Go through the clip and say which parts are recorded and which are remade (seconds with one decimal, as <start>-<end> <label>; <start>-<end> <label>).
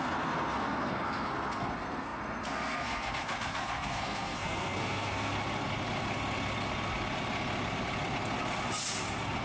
0.0-5.3 remade; 5.3-9.4 recorded